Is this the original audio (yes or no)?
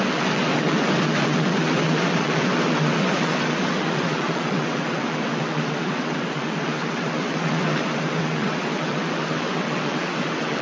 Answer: no